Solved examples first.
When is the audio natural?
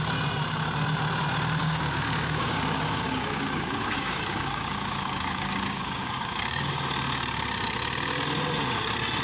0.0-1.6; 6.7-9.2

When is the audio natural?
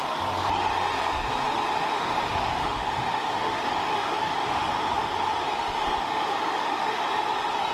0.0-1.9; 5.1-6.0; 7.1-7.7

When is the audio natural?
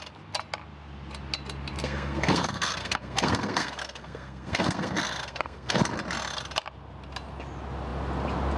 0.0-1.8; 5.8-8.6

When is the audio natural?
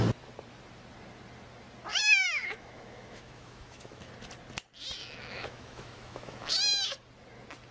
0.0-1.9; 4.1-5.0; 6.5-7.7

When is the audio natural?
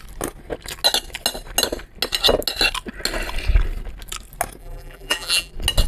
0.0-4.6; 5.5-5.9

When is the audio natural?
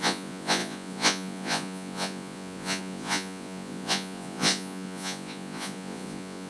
none